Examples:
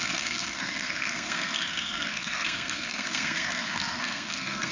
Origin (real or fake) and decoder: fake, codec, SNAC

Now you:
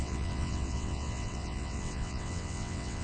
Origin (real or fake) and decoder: fake, vocoder, WaveNeXt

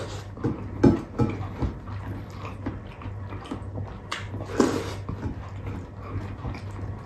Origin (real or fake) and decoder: real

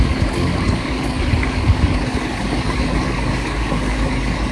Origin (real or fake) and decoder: fake, codec, DAC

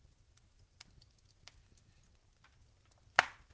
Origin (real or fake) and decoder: real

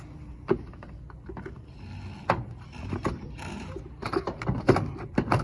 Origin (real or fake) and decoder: real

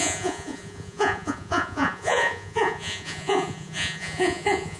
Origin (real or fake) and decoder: fake, vocoder, Vocos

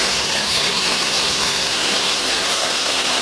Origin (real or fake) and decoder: fake, codec, SNAC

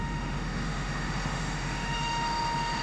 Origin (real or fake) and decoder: fake, autoencoder, DAC-VAE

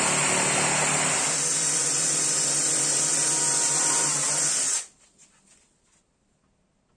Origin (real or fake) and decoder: real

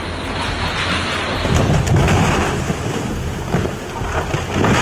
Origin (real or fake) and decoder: real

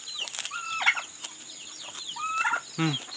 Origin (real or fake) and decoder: real